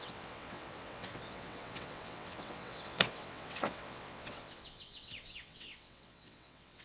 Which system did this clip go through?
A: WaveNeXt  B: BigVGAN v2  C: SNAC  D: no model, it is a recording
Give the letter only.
A